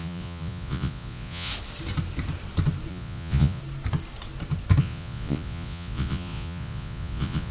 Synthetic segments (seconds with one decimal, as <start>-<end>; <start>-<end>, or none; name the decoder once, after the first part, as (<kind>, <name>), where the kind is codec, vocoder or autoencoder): 0.0-1.5 (vocoder, Vocos); 2.9-3.6; 4.8-7.5